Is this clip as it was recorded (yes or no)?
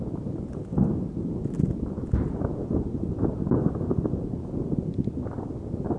yes